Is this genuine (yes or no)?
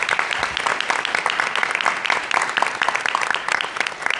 yes